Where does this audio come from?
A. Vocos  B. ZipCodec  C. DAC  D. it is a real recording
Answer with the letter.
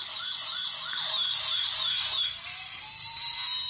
D